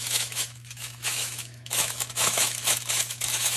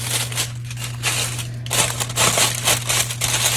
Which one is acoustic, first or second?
second